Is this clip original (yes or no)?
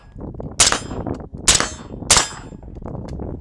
yes